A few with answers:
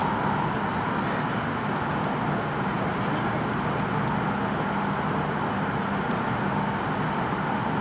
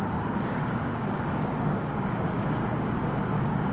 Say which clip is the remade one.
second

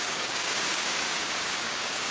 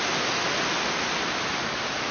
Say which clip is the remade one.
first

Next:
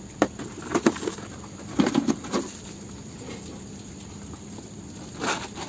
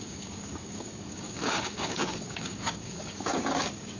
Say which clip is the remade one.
second